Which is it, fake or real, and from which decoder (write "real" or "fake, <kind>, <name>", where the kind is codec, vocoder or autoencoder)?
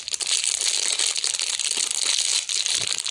real